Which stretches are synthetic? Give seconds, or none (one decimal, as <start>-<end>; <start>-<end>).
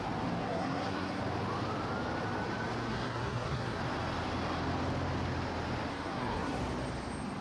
0.4-1.2; 2.9-3.8; 5.9-6.6